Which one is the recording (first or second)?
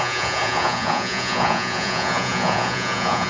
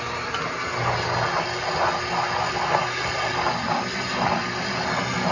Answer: second